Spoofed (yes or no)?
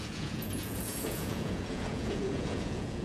yes